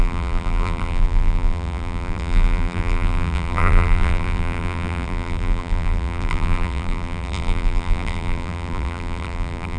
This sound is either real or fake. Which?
fake